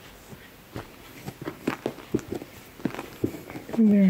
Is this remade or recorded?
recorded